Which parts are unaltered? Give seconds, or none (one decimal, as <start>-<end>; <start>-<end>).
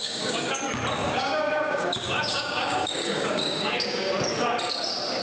0.6-1.0; 4.1-5.2